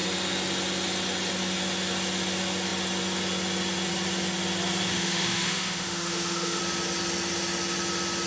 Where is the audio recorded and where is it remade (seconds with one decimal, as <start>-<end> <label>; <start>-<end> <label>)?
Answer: 0.0-4.9 recorded; 4.9-6.6 remade; 6.6-8.3 recorded